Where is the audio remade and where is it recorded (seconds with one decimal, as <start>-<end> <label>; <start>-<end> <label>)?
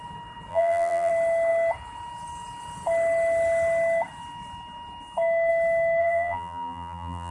0.0-0.5 recorded; 0.5-1.1 remade; 1.1-6.0 recorded; 6.0-7.3 remade